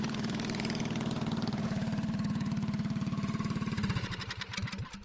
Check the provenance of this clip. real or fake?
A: fake